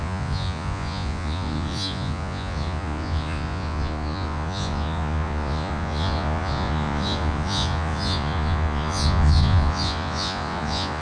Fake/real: fake